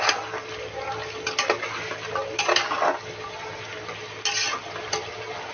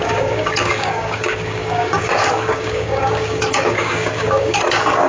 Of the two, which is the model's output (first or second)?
second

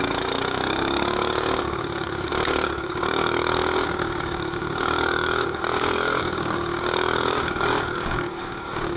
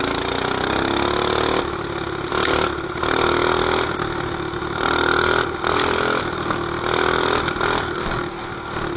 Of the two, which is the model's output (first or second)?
first